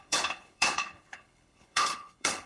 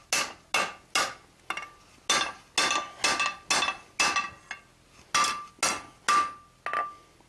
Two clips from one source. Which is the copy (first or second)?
first